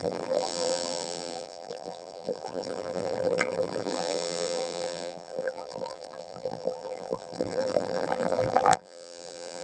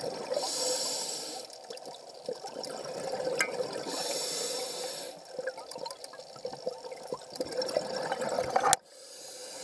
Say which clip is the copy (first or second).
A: first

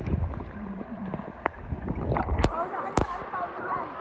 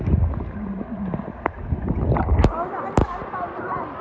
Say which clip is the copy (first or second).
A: first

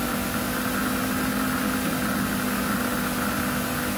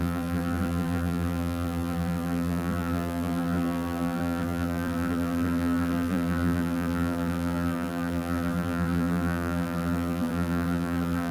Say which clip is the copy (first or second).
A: second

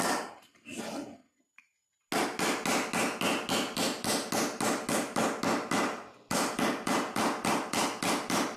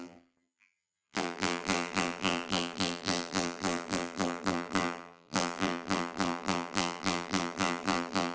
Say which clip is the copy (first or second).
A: second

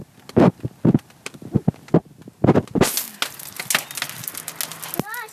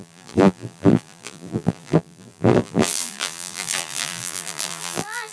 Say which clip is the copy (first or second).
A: second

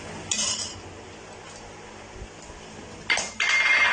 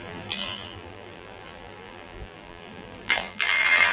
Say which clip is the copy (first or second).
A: second